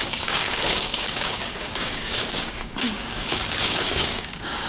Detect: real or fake fake